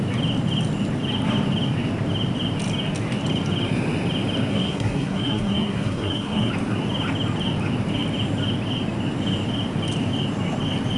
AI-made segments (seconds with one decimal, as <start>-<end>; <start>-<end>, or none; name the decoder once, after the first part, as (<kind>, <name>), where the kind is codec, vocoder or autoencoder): 4.5-6.5 (codec, SNAC)